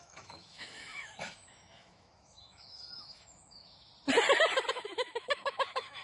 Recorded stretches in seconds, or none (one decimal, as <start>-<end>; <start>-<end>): 3.9-4.7